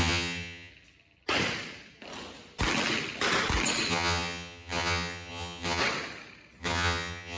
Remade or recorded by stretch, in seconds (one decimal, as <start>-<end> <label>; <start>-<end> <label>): 0.0-0.7 remade; 0.7-3.9 recorded; 3.9-5.8 remade; 5.8-6.6 recorded; 6.6-7.4 remade